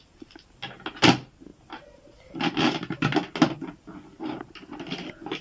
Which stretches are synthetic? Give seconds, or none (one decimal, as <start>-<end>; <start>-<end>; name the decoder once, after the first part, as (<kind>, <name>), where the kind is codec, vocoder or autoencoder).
none

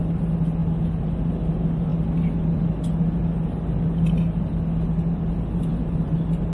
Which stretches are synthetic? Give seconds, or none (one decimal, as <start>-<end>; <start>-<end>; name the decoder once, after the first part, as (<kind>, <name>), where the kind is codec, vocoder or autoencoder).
none

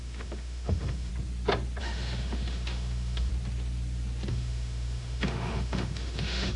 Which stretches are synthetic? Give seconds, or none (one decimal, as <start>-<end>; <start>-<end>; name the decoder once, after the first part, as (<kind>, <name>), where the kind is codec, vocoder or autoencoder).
0.0-1.1 (autoencoder, DAC-VAE); 1.8-3.3; 4.3-6.6

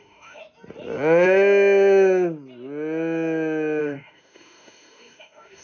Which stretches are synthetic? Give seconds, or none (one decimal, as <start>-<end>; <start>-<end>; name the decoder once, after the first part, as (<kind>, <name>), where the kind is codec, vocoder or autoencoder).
0.0-0.4 (autoencoder, DAC-VAE); 3.8-5.6

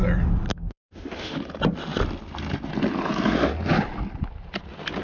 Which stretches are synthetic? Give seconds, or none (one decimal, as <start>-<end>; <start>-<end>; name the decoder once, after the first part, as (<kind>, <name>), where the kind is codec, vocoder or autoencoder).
0.5-1.4 (autoencoder, DAC-VAE)

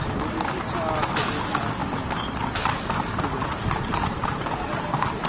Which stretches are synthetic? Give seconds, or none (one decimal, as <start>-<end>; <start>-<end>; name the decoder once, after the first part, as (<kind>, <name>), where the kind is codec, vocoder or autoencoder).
none